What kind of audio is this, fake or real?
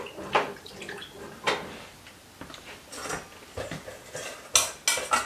real